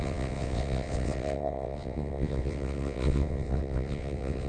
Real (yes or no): no